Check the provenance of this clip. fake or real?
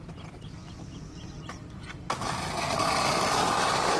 real